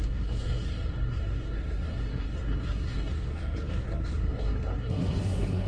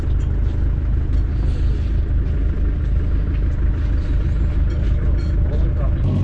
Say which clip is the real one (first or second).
second